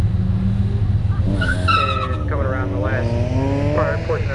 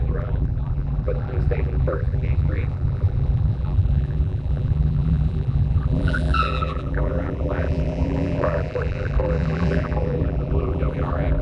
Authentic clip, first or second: first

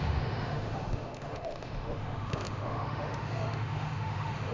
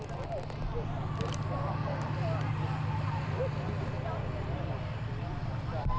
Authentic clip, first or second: second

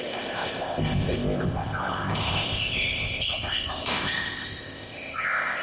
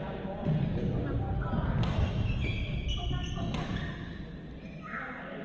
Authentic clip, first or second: second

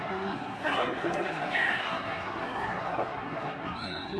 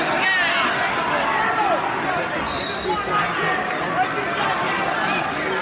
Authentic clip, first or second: second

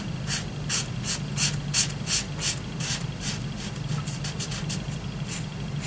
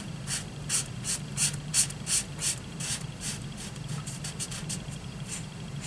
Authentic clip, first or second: first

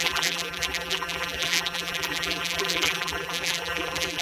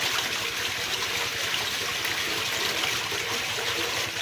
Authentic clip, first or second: second